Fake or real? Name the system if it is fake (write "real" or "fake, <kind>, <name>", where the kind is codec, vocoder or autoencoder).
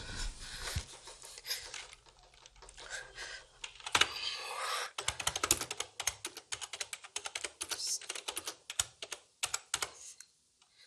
real